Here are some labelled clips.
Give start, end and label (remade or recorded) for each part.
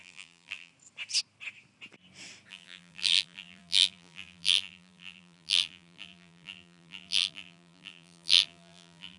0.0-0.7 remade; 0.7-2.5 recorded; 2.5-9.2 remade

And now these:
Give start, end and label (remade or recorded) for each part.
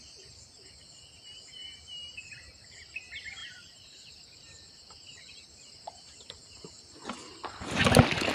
0.0-3.4 recorded; 3.4-4.4 remade; 4.4-8.3 recorded